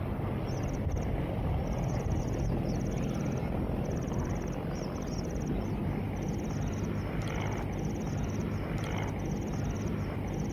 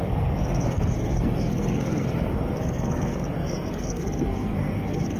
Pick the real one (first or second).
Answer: first